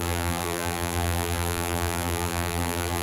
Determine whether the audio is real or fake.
fake